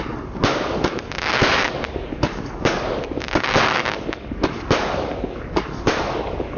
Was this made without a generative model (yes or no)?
no